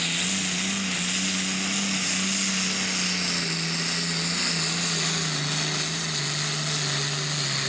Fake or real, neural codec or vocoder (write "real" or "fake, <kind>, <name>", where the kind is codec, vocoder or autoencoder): real